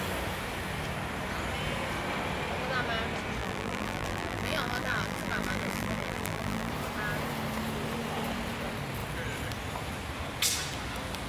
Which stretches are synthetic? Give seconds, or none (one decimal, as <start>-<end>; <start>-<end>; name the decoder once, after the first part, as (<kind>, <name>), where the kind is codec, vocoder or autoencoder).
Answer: 3.4-6.7 (vocoder, BigVGAN v2)